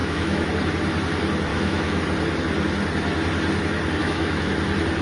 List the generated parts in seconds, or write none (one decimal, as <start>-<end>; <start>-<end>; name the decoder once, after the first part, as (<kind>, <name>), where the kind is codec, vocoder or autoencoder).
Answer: 0.0-0.5 (autoencoder, DAC-VAE); 1.5-2.0; 4.0-4.5